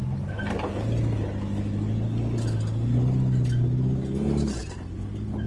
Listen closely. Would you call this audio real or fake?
real